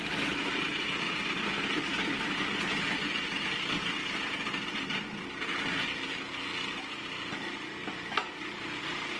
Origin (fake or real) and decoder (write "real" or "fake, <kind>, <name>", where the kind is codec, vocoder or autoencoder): real